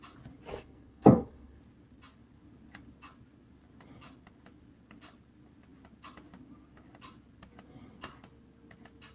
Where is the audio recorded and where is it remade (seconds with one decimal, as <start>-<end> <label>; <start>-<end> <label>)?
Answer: 0.0-0.5 recorded; 0.5-1.6 remade; 1.6-9.1 recorded